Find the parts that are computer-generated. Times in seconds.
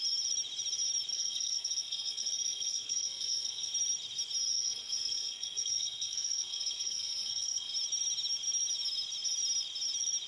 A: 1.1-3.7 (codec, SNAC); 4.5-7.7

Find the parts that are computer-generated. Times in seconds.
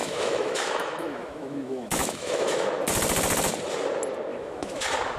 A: 0.0-2.7 (autoencoder, DAC-VAE); 4.3-4.8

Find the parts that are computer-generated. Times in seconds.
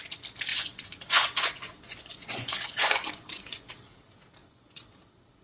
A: 0.5-3.7 (vocoder, Vocos); 4.4-5.0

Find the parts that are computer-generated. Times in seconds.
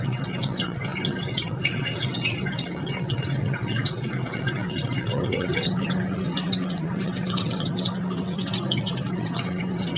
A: 0.0-10.0 (vocoder, WaveNeXt)